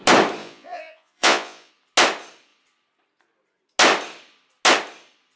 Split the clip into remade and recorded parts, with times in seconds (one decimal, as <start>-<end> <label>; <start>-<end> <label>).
0.0-0.4 recorded; 0.4-1.7 remade; 1.7-5.4 recorded